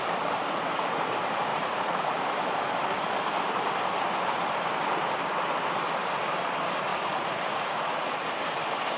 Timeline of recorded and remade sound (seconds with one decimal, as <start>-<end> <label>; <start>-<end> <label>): 0.0-1.5 recorded; 1.5-2.1 remade; 2.1-6.9 recorded; 6.9-8.3 remade; 8.3-9.0 recorded